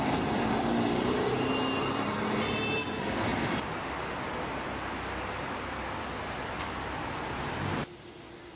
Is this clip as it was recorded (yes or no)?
yes